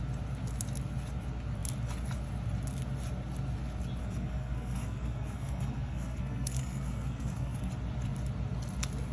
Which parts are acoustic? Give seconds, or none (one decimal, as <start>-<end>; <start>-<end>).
0.0-4.0; 7.7-9.1